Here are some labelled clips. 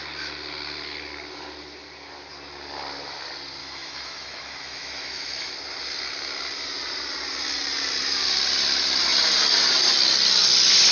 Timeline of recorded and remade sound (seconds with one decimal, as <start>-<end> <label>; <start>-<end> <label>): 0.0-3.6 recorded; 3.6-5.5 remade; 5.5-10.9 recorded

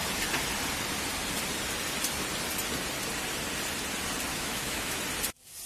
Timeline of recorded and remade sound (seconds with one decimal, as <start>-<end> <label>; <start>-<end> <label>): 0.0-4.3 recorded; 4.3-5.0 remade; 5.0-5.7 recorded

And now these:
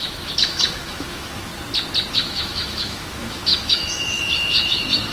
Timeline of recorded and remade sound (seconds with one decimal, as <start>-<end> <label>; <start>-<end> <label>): 0.0-1.5 remade; 1.5-2.1 recorded; 2.1-5.1 remade

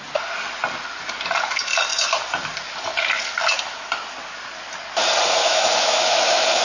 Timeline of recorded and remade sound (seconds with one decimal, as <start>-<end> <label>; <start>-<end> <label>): 0.0-5.4 recorded; 5.4-6.6 remade